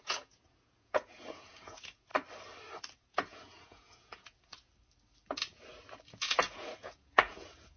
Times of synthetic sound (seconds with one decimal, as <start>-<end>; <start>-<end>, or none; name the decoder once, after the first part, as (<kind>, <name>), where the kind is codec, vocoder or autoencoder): 0.0-2.1 (vocoder, Vocos); 3.0-4.7; 6.1-7.8